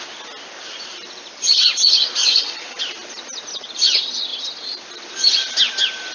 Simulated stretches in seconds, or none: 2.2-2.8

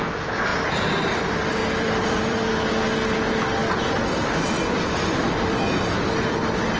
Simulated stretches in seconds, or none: 0.5-1.2; 1.6-2.5

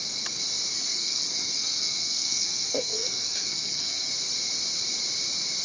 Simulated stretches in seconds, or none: 0.7-4.1

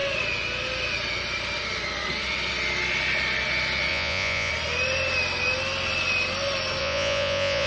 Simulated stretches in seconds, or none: 3.9-4.5; 6.8-7.7

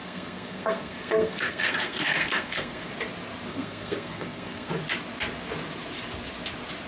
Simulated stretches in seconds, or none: 0.0-2.9; 3.5-4.7